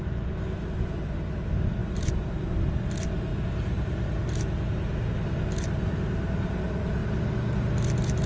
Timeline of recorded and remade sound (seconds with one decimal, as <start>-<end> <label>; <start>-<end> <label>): 0.0-3.3 recorded; 3.3-5.1 remade; 5.1-8.3 recorded